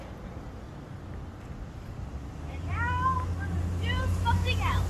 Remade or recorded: recorded